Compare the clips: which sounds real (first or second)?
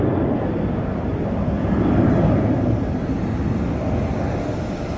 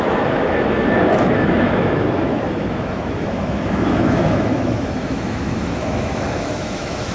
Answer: first